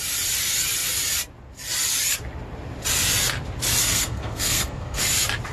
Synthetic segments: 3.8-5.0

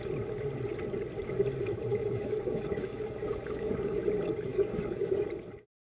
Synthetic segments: 1.9-4.0; 4.5-5.1

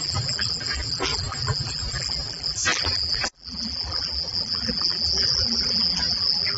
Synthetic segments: 0.0-6.6

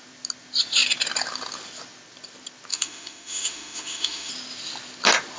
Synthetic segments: 2.7-4.3

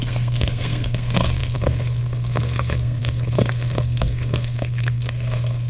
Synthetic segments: 0.0-5.7